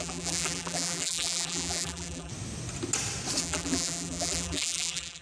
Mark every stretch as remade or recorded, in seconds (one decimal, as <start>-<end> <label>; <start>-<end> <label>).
0.0-2.3 remade; 2.3-3.4 recorded; 3.4-5.2 remade